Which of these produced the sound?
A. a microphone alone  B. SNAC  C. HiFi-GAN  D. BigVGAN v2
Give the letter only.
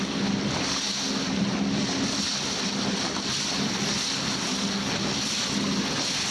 A